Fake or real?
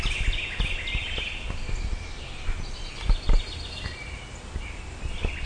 real